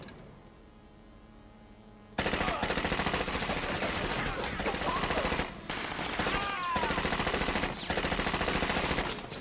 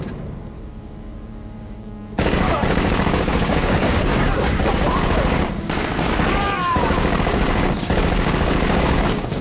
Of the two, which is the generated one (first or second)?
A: second